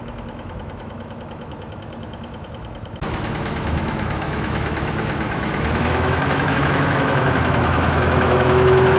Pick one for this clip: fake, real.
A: fake